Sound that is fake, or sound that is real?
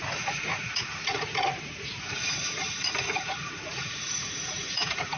fake